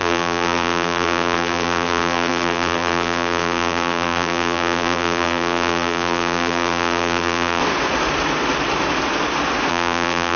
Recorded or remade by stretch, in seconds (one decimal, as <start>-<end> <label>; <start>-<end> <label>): 0.0-7.6 remade; 7.6-9.7 recorded; 9.7-10.4 remade